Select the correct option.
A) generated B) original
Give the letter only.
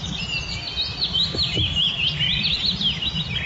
B